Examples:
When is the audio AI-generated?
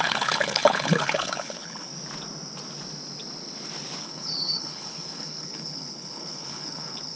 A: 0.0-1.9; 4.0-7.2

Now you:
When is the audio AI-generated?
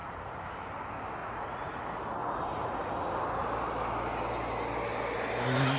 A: 1.2-1.8; 2.2-2.9